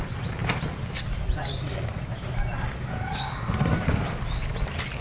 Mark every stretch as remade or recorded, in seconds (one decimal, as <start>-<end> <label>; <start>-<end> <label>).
0.0-5.0 recorded